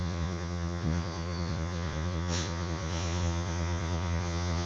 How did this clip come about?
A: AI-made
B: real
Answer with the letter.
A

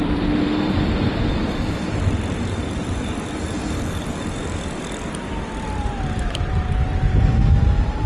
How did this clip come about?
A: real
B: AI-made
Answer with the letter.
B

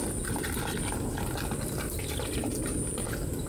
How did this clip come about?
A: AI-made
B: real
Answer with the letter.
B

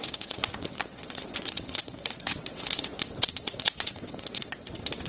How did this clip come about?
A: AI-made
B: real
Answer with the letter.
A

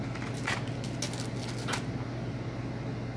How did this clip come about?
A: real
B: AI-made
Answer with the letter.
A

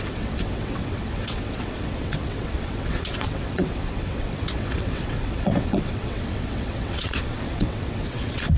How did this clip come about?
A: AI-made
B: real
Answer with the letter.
A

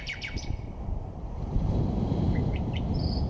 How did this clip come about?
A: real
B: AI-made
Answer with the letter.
B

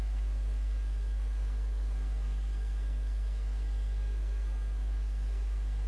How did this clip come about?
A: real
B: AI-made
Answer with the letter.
B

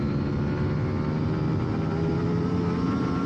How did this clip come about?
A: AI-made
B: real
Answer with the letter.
B